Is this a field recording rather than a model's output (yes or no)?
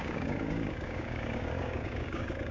no